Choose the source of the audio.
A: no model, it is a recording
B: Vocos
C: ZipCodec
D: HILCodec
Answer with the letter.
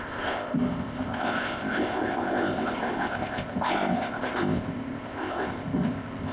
C